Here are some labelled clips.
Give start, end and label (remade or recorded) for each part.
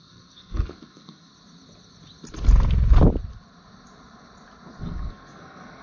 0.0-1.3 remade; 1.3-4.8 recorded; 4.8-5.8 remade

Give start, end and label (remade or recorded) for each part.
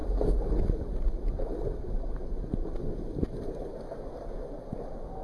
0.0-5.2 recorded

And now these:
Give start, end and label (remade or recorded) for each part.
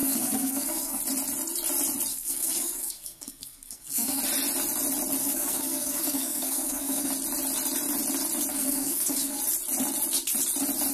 0.0-1.0 remade; 1.0-2.1 recorded; 2.1-4.2 remade; 4.2-5.2 recorded; 5.2-7.1 remade; 7.1-8.5 recorded; 8.5-9.4 remade; 9.4-10.9 recorded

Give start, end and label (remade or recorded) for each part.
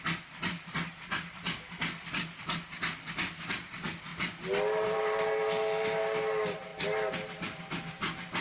0.0-8.4 recorded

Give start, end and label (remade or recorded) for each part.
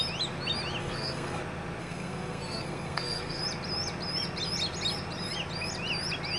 0.0-0.8 recorded; 0.8-1.4 remade; 1.4-1.8 recorded; 1.8-3.4 remade; 3.4-6.4 recorded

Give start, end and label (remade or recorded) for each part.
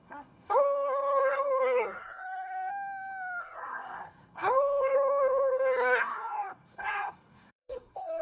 0.0-2.7 remade; 2.7-3.4 recorded; 3.4-8.2 remade